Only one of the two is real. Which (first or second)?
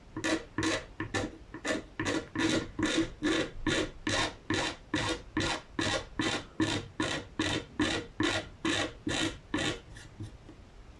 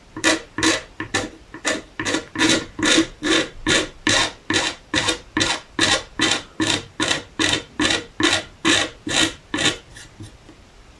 first